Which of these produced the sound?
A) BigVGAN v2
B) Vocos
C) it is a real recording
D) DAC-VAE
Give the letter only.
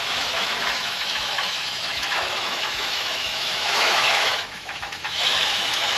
D